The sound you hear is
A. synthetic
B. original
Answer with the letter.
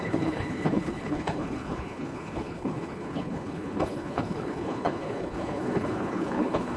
A